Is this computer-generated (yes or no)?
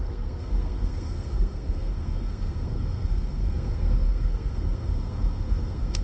yes